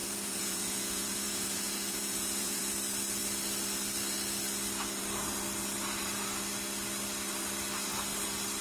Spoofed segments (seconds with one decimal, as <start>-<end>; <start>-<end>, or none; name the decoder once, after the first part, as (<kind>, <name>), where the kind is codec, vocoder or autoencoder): 0.0-2.6 (vocoder, Vocos)